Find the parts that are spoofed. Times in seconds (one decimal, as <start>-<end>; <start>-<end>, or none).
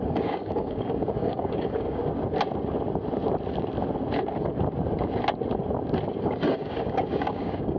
0.0-2.0; 6.2-7.8